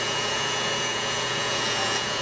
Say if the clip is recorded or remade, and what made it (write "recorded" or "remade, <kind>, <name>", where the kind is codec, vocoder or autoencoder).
remade, vocoder, Vocos